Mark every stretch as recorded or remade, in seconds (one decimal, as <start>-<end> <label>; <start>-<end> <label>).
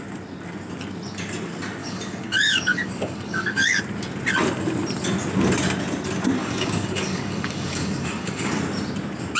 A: 0.0-1.8 recorded; 1.8-3.8 remade; 3.8-6.4 recorded; 6.4-8.6 remade; 8.6-9.4 recorded